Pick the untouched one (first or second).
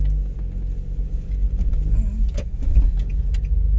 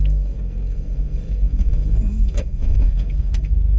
first